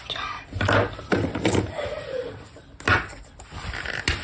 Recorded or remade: recorded